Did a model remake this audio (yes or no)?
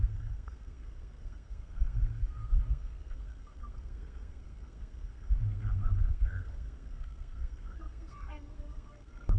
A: yes